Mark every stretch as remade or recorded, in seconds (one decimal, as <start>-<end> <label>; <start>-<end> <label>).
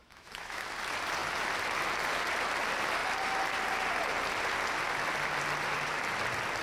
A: 0.0-0.6 remade; 0.6-6.6 recorded